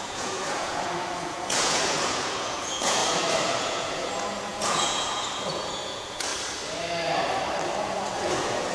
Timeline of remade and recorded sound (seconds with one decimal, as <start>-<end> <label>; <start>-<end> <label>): 0.0-3.0 remade; 3.0-3.6 recorded; 3.6-6.3 remade; 6.3-7.8 recorded; 7.8-8.7 remade